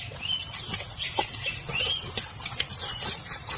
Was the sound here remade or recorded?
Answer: recorded